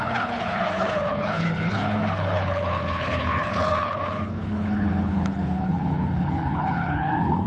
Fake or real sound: fake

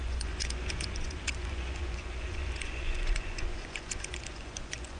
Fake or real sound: fake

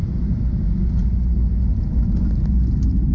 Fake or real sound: real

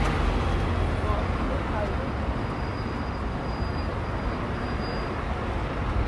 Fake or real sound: real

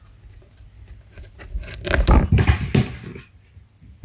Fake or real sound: real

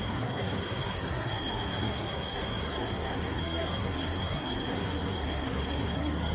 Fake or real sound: fake